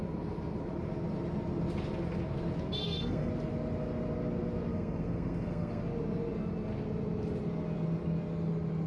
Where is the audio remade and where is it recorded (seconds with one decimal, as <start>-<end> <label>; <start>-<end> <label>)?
0.0-2.8 recorded; 2.8-3.3 remade; 3.3-4.7 recorded; 4.7-5.8 remade; 5.8-8.9 recorded